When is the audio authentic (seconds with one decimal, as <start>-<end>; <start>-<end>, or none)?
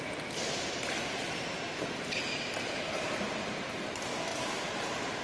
0.0-0.8; 3.9-4.3